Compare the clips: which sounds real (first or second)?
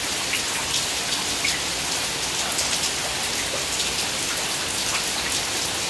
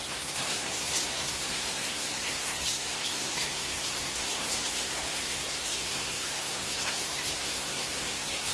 first